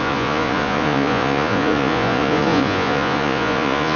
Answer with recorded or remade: remade